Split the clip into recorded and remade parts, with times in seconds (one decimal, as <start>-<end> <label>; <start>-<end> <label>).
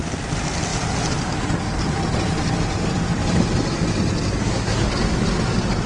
0.0-4.4 recorded; 4.4-4.9 remade; 4.9-5.9 recorded